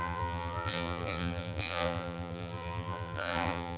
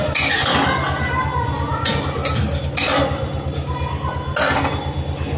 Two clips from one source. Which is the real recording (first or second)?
second